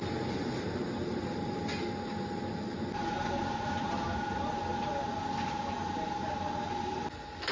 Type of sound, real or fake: real